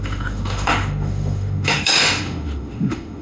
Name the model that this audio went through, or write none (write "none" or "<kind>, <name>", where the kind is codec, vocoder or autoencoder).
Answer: autoencoder, DAC-VAE